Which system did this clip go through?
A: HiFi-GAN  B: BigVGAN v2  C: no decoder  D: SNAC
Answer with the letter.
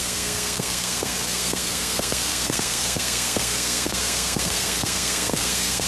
D